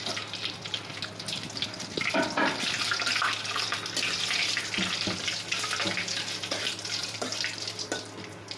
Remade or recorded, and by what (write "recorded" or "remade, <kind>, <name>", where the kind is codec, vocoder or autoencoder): recorded